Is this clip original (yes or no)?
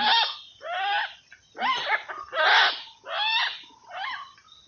yes